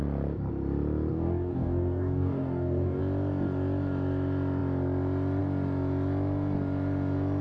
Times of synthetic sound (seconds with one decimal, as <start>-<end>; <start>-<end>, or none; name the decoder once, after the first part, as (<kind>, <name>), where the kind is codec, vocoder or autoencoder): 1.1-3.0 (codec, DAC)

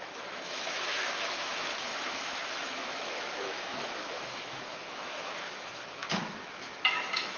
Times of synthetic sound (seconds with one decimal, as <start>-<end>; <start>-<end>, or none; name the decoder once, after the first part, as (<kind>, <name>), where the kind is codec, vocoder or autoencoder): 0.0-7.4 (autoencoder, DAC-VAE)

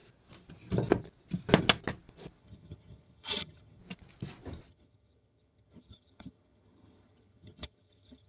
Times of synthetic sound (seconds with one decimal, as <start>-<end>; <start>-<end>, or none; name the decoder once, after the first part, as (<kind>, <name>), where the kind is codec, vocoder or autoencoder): 2.4-3.8 (vocoder, HiFi-GAN); 4.7-8.3